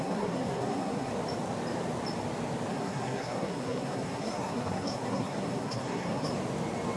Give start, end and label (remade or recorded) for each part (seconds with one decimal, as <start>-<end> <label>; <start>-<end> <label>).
0.0-1.1 remade; 1.1-2.7 recorded; 2.7-6.3 remade; 6.3-7.0 recorded